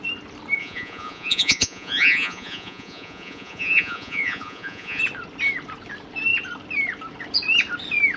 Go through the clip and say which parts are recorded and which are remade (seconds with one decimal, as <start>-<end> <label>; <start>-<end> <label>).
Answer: 0.0-0.6 recorded; 0.6-5.0 remade; 5.0-8.2 recorded